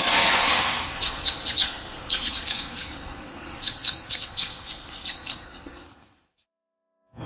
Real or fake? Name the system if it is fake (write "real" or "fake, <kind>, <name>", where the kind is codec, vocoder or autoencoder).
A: fake, codec, SNAC